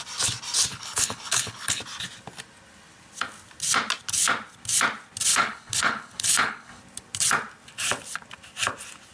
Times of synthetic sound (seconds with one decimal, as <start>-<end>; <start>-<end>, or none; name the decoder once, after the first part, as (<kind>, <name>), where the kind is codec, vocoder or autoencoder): 0.7-1.8 (codec, HILCodec); 5.3-6.8